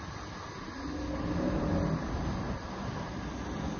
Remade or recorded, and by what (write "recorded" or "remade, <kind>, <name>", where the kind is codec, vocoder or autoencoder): recorded